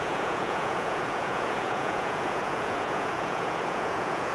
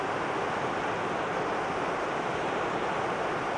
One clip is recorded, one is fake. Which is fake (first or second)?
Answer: first